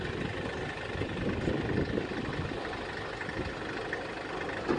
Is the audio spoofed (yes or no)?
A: no